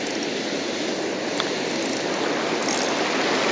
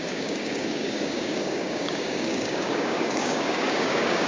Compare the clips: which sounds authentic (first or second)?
first